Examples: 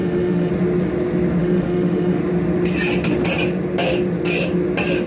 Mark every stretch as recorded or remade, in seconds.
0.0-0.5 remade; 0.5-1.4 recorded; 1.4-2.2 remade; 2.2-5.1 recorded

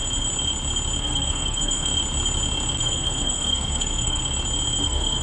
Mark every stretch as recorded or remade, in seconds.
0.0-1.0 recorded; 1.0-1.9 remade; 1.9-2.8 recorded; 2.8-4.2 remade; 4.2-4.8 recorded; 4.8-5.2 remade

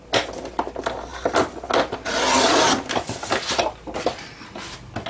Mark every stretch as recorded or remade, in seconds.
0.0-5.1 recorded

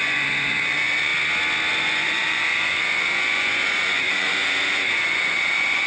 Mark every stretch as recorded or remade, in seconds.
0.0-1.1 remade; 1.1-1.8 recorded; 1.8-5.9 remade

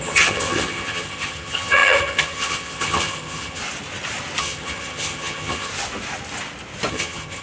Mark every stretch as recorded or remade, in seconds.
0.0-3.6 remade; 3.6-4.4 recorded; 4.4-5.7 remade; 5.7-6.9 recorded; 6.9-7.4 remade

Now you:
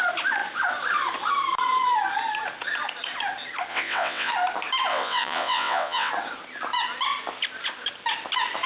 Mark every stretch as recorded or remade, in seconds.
0.0-3.7 recorded; 3.7-4.3 remade; 4.3-4.9 recorded; 4.9-6.1 remade; 6.1-8.7 recorded

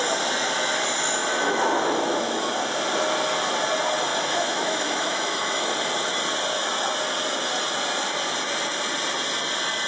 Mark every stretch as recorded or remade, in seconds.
0.0-1.2 recorded; 1.2-2.5 remade; 2.5-4.1 recorded; 4.1-5.6 remade; 5.6-9.9 recorded

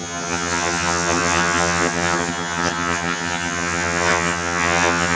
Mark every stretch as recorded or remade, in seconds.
0.0-5.2 remade